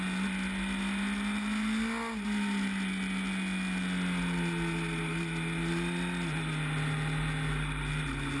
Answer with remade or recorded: recorded